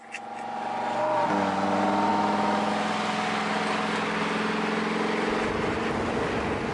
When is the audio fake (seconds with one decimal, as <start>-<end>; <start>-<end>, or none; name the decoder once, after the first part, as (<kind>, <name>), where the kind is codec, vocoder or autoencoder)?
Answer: 2.1-2.7 (autoencoder, DAC-VAE)